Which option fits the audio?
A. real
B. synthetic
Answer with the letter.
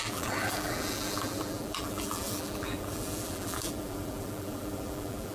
B